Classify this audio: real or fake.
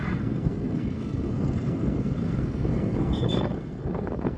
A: fake